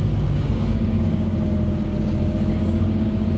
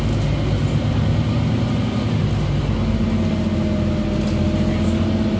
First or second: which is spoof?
first